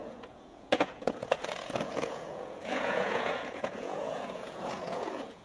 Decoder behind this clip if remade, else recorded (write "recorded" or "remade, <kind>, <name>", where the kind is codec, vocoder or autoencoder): remade, vocoder, Vocos